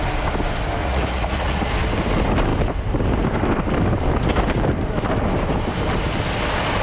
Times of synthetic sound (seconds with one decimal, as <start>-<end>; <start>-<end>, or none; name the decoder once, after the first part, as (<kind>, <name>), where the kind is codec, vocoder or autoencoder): 0.8-1.7 (vocoder, Vocos)